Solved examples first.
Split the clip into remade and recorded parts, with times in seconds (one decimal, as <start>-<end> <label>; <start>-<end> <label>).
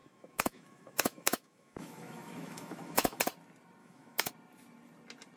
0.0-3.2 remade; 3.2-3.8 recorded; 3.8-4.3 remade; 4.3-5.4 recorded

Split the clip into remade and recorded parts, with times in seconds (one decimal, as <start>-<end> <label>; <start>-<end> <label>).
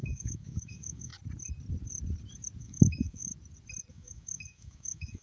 0.0-1.1 remade; 1.1-2.6 recorded; 2.6-3.3 remade; 3.3-3.9 recorded; 3.9-5.2 remade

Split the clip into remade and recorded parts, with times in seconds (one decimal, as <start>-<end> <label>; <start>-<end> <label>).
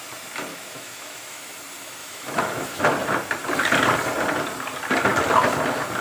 0.0-0.5 recorded; 0.5-1.5 remade; 1.5-2.0 recorded; 2.0-2.8 remade; 2.8-6.0 recorded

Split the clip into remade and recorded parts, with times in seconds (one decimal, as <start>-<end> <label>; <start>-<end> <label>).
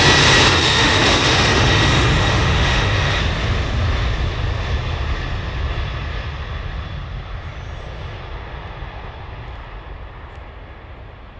0.0-0.5 recorded; 0.5-3.2 remade; 3.2-11.4 recorded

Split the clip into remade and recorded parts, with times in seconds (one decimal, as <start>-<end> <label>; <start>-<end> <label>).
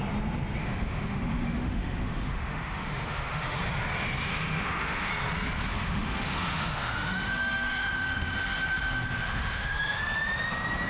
0.0-0.6 recorded; 0.6-3.6 remade; 3.6-4.3 recorded; 4.3-5.1 remade; 5.1-5.7 recorded; 5.7-10.0 remade; 10.0-10.9 recorded